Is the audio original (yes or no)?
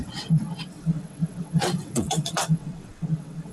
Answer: no